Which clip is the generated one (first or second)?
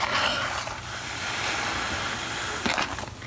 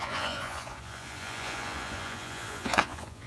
second